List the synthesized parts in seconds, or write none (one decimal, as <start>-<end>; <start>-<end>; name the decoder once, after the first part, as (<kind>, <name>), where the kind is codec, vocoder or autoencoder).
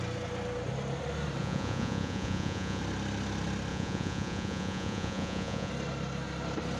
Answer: 1.4-2.8 (vocoder, Vocos); 3.7-5.7